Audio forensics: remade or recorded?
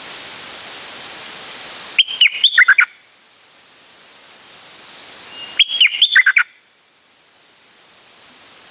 recorded